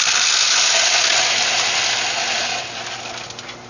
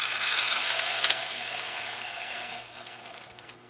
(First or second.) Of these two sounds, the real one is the first